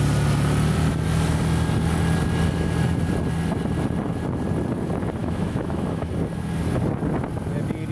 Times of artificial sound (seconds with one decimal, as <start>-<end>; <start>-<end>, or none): 5.2-6.1